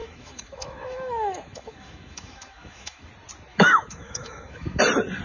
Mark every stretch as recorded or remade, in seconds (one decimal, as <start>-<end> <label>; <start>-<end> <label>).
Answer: 0.0-3.1 remade; 3.1-3.5 recorded; 3.5-4.8 remade; 4.8-5.2 recorded